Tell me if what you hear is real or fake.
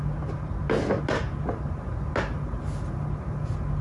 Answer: real